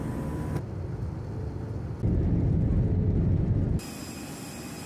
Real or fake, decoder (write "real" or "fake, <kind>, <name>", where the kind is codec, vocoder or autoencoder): real